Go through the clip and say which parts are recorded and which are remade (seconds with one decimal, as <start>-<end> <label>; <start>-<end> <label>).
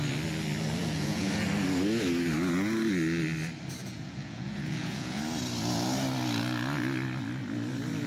0.0-0.8 recorded; 0.8-1.4 remade; 1.4-3.8 recorded; 3.8-5.2 remade; 5.2-8.1 recorded